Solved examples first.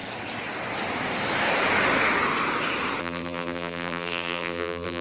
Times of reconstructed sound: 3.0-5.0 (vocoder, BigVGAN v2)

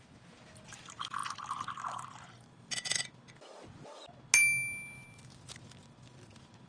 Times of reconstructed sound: none

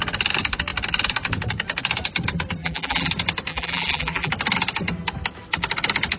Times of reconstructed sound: 2.6-3.1 (vocoder, BigVGAN v2); 3.5-4.3

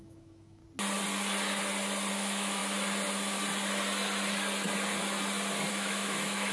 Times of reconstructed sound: 0.0-0.6 (autoencoder, DAC-VAE); 2.1-2.6; 5.7-6.5

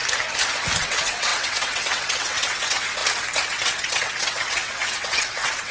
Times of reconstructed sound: 0.8-3.0 (vocoder, WaveNeXt); 3.5-5.7

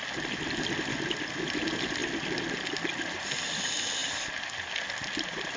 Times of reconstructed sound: none

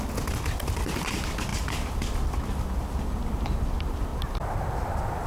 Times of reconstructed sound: none